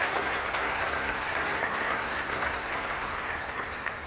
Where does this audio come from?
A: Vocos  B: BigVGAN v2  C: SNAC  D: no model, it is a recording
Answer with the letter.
C